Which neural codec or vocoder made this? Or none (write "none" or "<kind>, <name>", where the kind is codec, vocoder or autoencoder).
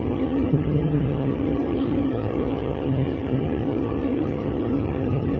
vocoder, HiFi-GAN